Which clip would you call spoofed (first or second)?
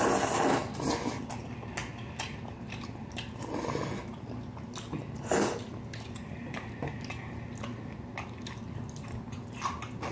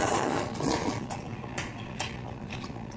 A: second